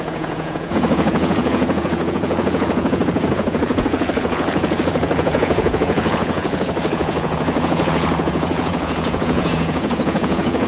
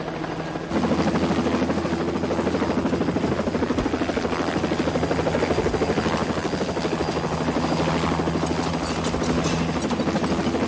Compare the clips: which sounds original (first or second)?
second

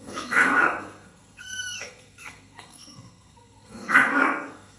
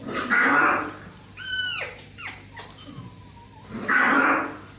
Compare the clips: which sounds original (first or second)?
second